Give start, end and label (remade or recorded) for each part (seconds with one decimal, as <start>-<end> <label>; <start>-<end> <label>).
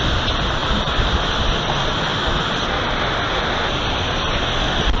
0.0-0.6 recorded; 0.6-1.2 remade; 1.2-2.1 recorded; 2.1-2.6 remade; 2.6-5.0 recorded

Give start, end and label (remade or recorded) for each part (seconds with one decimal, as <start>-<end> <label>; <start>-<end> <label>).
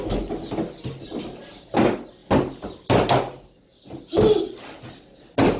0.0-5.6 recorded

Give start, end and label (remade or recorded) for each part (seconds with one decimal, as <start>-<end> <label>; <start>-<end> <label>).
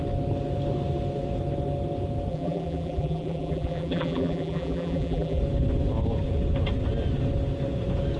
0.0-2.3 recorded; 2.3-5.4 remade; 5.4-8.2 recorded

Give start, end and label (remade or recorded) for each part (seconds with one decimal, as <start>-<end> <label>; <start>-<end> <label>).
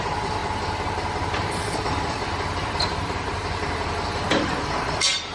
0.0-0.4 remade; 0.4-1.5 recorded; 1.5-5.3 remade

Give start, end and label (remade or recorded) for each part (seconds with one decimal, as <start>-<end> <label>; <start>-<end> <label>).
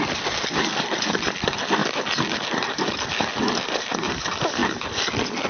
0.0-1.8 recorded; 1.8-2.8 remade; 2.8-4.6 recorded; 4.6-5.1 remade; 5.1-5.5 recorded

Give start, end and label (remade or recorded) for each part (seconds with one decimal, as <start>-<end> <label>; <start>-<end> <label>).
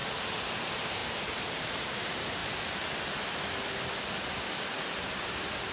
0.0-0.6 recorded; 0.6-2.4 remade; 2.4-5.2 recorded; 5.2-5.7 remade